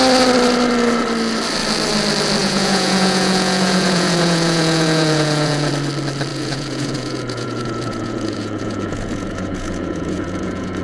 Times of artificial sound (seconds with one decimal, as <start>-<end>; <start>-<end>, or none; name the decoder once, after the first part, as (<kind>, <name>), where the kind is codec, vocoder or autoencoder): 2.4-5.7 (vocoder, Vocos); 6.3-10.8